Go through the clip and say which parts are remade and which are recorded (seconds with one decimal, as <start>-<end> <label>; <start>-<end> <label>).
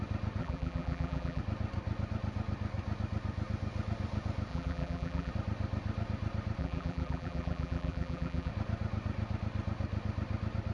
0.0-0.4 recorded; 0.4-1.4 remade; 1.4-4.5 recorded; 4.5-5.3 remade; 5.3-6.6 recorded; 6.6-8.5 remade; 8.5-10.7 recorded